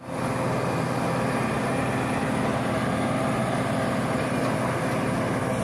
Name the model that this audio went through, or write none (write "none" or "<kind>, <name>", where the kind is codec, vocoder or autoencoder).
none